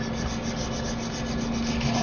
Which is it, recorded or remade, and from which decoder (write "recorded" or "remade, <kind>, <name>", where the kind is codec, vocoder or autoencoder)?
recorded